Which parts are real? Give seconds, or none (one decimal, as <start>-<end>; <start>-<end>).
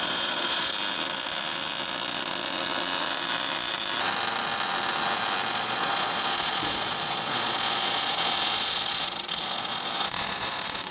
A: 0.7-5.5